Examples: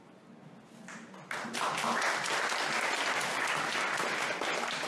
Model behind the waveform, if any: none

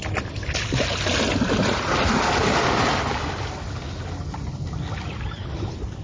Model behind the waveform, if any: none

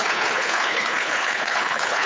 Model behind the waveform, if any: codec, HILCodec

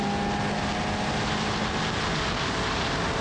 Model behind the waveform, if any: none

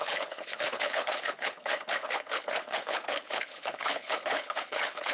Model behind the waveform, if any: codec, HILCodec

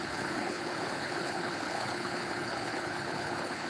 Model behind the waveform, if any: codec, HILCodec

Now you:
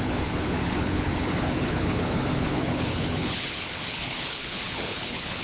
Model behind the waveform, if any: codec, HILCodec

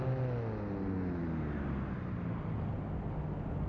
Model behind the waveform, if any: none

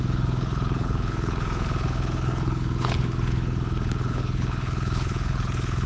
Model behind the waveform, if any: codec, HILCodec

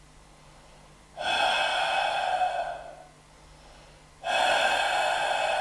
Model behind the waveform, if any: none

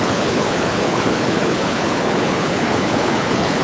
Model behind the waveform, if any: codec, HILCodec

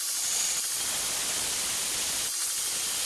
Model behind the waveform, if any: none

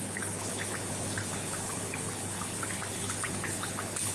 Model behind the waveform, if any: codec, HILCodec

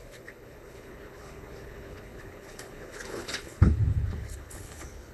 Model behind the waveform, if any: codec, HILCodec